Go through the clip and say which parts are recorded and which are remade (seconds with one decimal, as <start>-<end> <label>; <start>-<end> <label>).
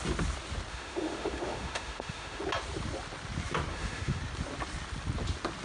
0.0-0.7 recorded; 0.7-2.4 remade; 2.4-3.7 recorded; 3.7-4.2 remade; 4.2-5.6 recorded